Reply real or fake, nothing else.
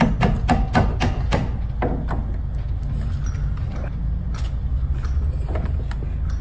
real